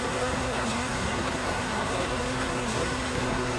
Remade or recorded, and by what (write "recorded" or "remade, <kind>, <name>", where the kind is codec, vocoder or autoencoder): remade, codec, SNAC